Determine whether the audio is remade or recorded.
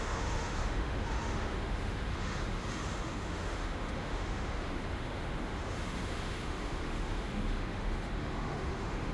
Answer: remade